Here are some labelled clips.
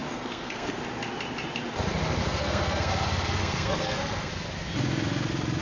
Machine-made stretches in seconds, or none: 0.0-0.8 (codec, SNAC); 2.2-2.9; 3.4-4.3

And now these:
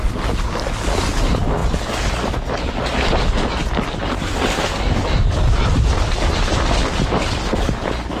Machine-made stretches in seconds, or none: none

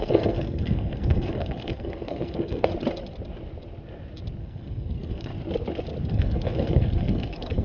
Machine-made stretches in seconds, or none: 0.0-2.7 (codec, SNAC); 4.4-5.3; 6.1-7.6